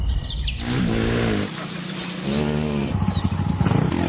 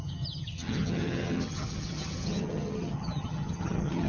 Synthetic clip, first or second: second